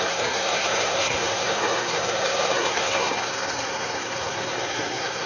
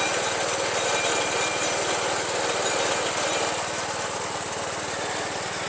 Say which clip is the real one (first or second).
second